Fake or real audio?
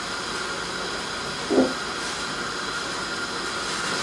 real